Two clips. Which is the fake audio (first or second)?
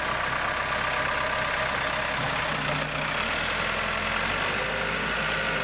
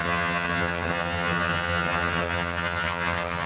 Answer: second